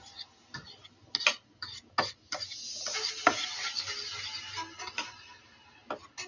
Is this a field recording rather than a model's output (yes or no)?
yes